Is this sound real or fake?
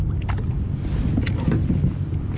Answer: real